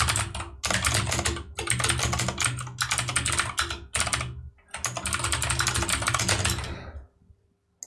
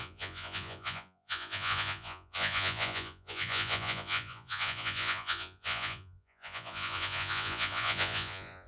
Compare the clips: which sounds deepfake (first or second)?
second